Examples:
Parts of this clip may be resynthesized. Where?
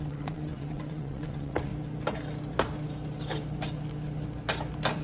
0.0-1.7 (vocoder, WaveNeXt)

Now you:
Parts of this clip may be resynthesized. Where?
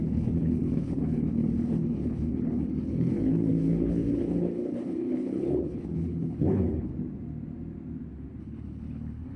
0.0-6.9 (codec, HILCodec); 8.4-9.4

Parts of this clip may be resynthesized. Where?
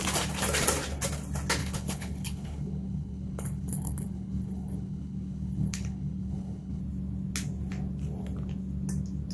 1.6-6.8 (codec, HILCodec)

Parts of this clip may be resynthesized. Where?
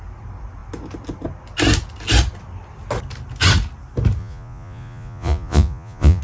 4.2-6.2 (vocoder, Vocos)